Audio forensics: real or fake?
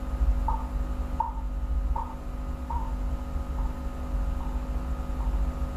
real